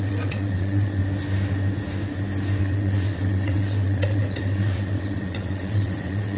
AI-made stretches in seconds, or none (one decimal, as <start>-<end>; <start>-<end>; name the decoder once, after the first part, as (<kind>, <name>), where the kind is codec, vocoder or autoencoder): 0.0-1.0 (vocoder, WaveNeXt); 2.6-6.4